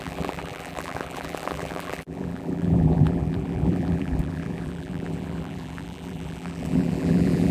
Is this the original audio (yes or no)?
no